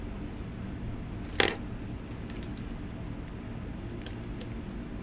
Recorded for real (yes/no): yes